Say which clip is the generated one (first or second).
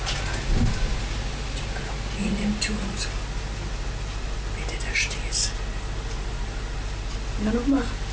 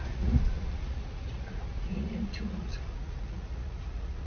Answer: second